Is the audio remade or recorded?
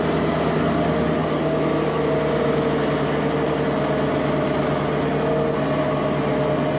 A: recorded